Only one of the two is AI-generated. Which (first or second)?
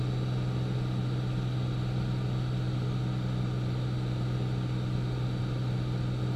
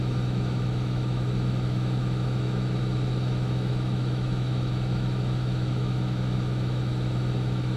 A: second